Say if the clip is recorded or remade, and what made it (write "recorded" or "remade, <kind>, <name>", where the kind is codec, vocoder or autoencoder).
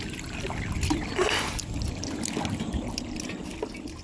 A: recorded